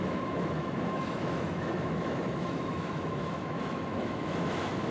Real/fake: fake